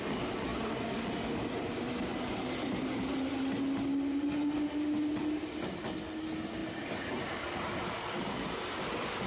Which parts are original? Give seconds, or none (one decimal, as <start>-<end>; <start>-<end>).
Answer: 0.0-9.3